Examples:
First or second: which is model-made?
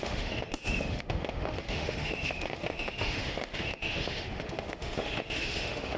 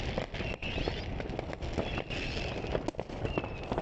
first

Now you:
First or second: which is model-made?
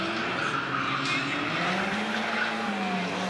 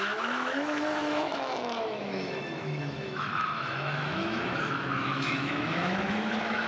second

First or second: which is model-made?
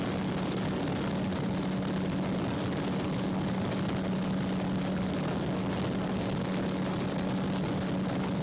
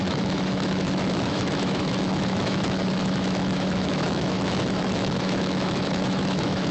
second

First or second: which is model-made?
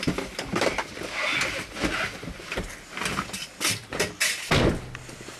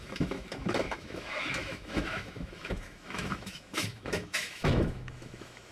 second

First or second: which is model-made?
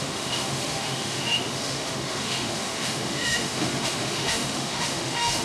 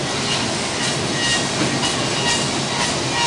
first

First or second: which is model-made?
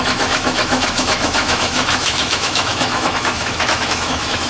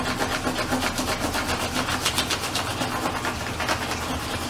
first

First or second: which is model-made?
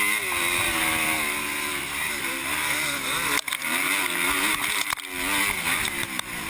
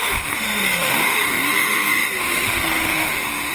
second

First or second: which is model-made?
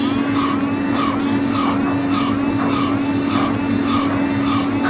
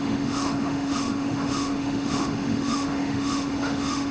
second